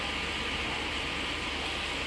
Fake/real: real